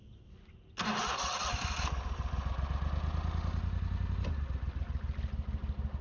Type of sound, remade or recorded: recorded